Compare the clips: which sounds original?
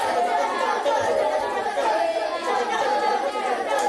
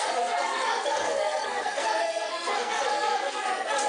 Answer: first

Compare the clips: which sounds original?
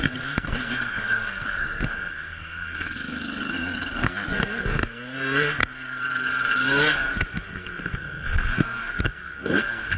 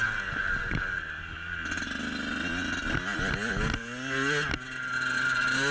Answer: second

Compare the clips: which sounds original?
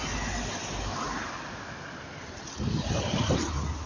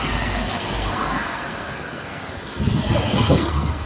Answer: first